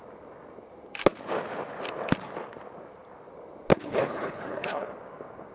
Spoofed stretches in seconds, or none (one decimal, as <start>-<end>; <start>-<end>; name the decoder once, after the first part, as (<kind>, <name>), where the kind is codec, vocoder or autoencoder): 3.7-4.9 (codec, HILCodec)